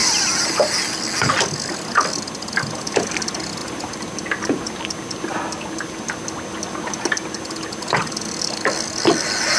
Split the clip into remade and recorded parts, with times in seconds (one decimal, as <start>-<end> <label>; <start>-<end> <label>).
0.0-0.7 remade; 0.7-9.6 recorded